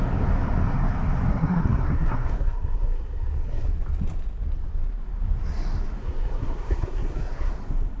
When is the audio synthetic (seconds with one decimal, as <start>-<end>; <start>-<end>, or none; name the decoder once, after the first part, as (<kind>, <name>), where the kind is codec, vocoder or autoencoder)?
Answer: 1.3-3.7 (codec, SNAC); 6.0-7.5